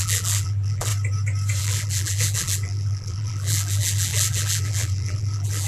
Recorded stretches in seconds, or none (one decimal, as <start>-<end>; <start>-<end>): 0.9-1.6